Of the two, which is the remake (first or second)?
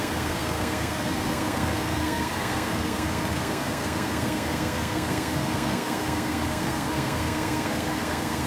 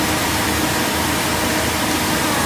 first